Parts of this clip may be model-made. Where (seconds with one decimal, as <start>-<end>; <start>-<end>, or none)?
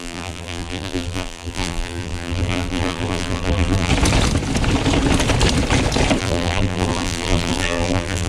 0.0-3.9; 6.2-8.3